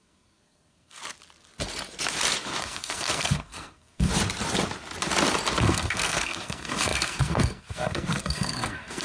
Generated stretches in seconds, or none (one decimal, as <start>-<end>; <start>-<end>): 0.0-1.0; 2.6-4.1; 5.6-9.0